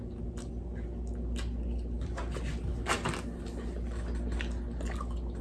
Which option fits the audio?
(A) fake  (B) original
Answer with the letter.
B